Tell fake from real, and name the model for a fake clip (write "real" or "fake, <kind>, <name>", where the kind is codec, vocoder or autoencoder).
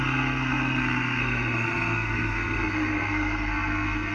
fake, codec, SNAC